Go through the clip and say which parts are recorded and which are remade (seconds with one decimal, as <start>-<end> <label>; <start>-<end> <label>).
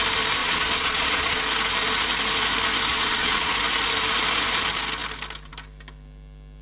0.0-0.4 recorded; 0.4-1.4 remade; 1.4-2.9 recorded; 2.9-3.5 remade; 3.5-6.6 recorded